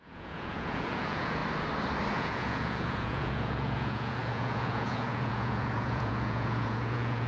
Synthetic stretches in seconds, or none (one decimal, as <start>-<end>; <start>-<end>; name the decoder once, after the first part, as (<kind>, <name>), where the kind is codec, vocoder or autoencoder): 0.0-1.4 (vocoder, Vocos); 2.1-7.3